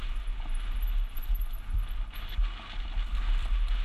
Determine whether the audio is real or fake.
real